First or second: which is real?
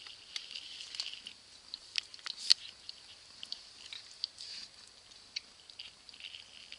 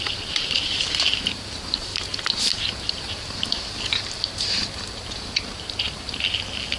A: first